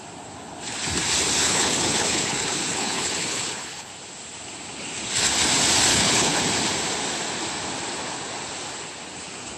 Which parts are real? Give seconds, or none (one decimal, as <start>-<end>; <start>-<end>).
0.0-1.4; 3.9-5.9; 6.4-9.6